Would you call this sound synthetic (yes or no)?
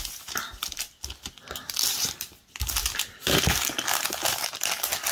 no